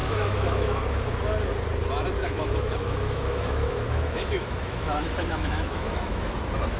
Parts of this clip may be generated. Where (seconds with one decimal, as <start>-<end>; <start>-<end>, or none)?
0.0-0.8; 2.2-6.3